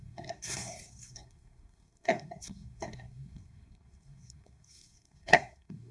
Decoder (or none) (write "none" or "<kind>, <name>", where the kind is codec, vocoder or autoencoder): codec, SNAC